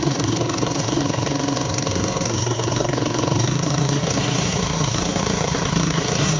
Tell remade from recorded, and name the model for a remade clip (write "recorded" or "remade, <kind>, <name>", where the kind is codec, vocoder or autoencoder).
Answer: remade, codec, SNAC